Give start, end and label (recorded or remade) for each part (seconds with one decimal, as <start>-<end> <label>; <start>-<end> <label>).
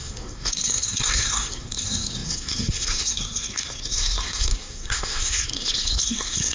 0.0-6.5 remade